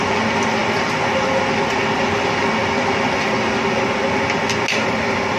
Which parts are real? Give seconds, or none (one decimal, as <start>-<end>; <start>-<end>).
0.0-5.4